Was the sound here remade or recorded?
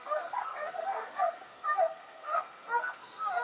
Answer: remade